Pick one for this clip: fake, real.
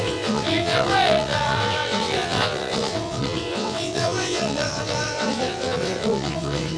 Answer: fake